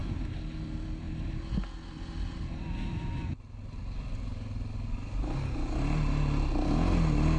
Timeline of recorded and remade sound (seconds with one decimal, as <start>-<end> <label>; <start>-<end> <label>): 0.0-7.4 recorded